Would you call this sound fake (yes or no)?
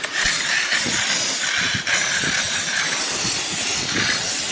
no